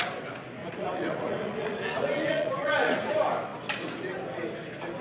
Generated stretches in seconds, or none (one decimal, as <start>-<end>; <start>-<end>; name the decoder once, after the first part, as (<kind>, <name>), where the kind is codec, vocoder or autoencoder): 0.6-3.1 (vocoder, Vocos)